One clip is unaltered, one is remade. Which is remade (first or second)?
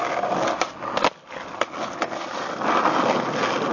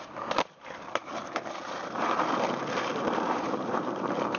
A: second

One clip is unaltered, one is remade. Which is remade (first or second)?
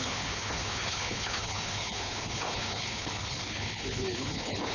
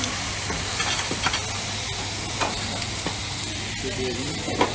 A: first